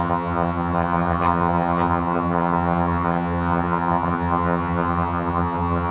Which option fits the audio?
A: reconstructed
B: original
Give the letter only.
A